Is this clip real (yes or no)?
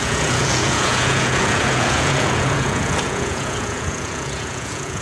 no